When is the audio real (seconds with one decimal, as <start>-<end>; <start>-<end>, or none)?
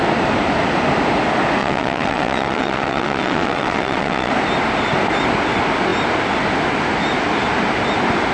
0.0-1.6; 4.3-8.3